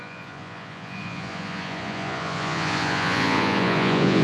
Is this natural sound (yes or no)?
no